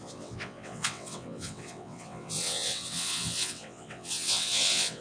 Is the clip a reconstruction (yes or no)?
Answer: yes